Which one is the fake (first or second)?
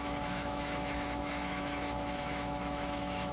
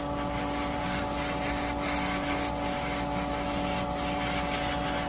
first